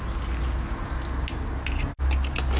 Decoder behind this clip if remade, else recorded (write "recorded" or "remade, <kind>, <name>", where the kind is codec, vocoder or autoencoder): recorded